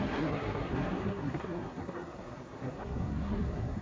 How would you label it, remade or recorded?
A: remade